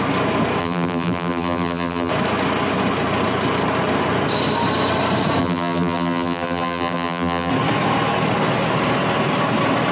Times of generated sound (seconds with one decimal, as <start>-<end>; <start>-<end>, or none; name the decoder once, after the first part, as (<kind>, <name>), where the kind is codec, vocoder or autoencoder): 0.6-2.1 (vocoder, BigVGAN v2); 5.4-7.5